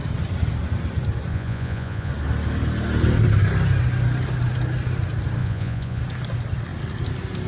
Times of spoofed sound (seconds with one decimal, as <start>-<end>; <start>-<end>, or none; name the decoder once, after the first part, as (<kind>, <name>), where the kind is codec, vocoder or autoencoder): 1.3-2.1 (vocoder, Vocos); 5.4-6.0